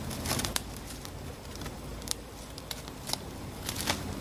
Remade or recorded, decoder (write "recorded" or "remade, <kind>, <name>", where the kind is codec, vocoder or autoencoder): recorded